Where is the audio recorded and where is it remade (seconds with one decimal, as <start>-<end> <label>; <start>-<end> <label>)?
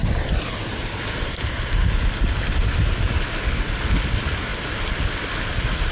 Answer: 0.0-1.0 remade; 1.0-5.9 recorded